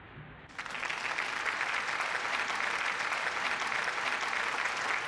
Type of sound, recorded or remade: recorded